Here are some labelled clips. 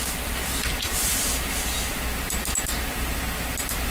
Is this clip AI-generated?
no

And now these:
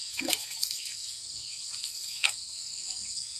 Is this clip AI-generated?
yes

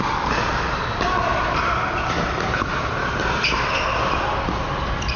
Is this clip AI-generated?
no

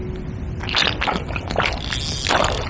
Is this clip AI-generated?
no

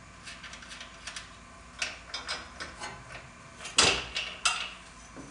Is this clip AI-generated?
no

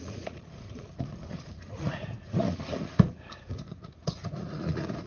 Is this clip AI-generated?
yes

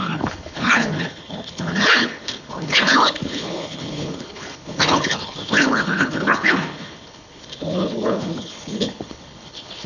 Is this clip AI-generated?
yes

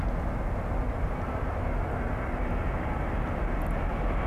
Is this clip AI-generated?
no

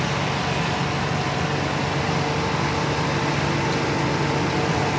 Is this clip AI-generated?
no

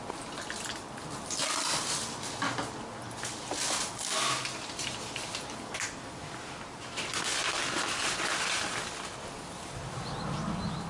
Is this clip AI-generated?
no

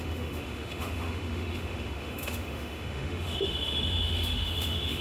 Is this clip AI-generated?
yes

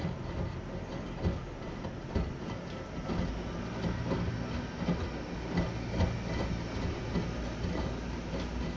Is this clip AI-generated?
no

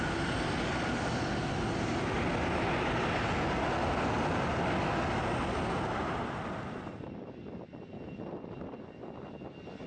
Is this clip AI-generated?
no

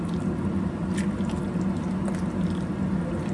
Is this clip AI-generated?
no